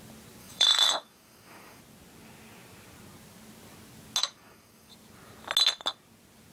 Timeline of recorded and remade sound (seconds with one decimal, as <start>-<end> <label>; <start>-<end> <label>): 0.0-0.4 recorded; 0.4-1.8 remade; 1.8-4.2 recorded; 4.2-4.9 remade; 4.9-6.5 recorded